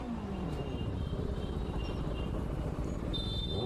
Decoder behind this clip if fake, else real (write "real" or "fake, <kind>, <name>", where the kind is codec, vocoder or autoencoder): fake, vocoder, BigVGAN v2